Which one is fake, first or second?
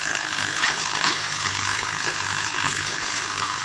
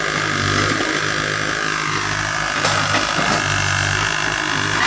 first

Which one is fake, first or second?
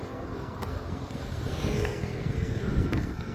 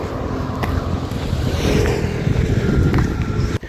first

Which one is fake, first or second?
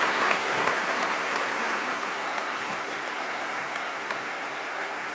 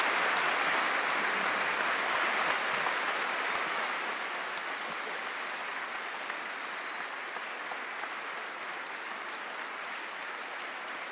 first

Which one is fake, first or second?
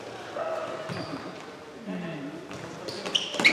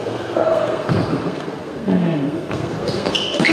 second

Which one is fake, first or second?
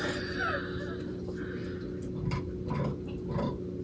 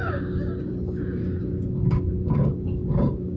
second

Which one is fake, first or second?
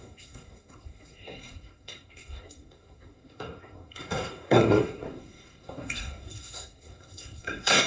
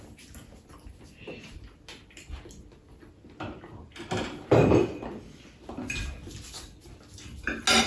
first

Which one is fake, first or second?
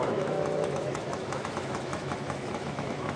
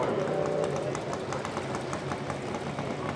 first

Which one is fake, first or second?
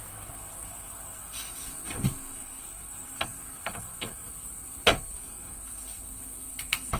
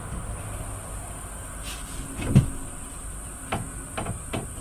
first